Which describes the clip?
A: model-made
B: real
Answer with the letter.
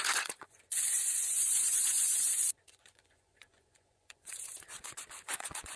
A